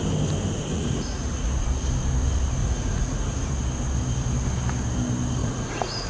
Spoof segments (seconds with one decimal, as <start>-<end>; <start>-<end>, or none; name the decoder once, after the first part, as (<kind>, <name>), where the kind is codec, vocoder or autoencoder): 0.7-1.5 (vocoder, Vocos); 2.6-3.5; 5.4-6.1